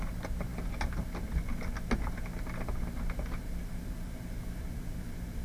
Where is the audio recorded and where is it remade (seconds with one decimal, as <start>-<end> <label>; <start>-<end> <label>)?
0.0-0.5 remade; 0.5-3.7 recorded; 3.7-5.4 remade